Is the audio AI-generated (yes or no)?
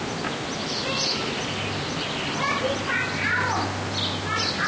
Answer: no